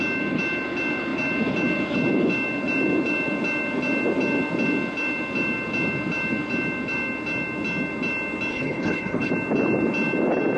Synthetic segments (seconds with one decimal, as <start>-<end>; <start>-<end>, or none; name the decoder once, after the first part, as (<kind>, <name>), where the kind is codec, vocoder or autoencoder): 8.5-9.3 (codec, HILCodec)